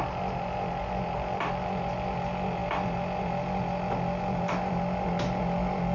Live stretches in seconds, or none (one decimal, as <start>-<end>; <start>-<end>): 0.0-5.9